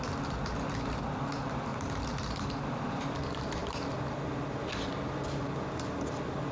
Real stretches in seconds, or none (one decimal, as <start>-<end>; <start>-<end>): 0.0-6.5

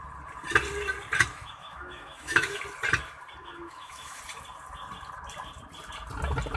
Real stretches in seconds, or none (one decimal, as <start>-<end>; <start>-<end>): 0.0-1.3; 2.6-3.4; 4.2-6.6